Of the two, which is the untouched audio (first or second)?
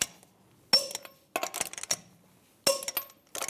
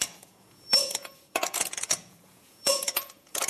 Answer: first